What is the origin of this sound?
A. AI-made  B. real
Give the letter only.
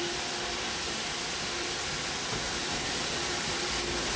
A